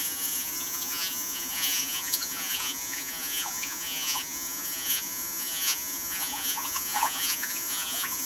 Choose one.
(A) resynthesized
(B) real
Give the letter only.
A